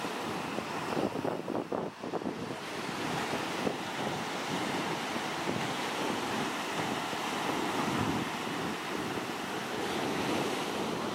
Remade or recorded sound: remade